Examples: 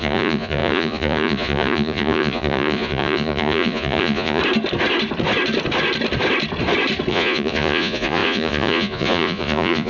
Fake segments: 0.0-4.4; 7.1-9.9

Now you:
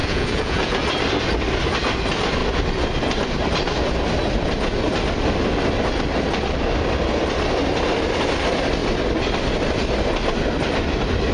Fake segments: 0.0-0.9

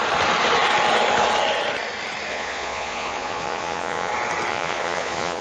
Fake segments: 2.3-4.1; 4.5-5.4

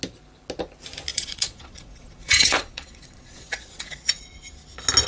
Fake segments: 1.1-4.2

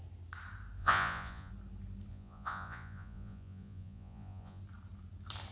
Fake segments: 0.8-1.5; 2.1-4.6

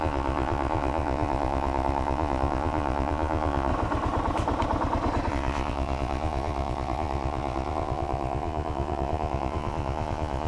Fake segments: 0.0-3.7; 5.3-10.5